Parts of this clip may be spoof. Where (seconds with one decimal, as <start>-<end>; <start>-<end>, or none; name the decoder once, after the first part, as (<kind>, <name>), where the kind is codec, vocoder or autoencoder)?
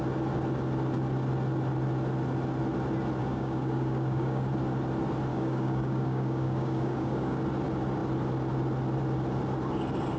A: 3.2-4.5 (codec, DAC); 5.3-7.4